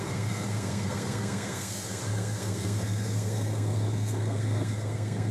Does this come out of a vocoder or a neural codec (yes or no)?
yes